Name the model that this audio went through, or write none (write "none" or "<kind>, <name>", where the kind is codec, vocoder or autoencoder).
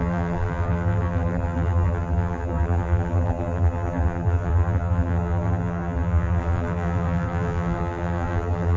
vocoder, BigVGAN v2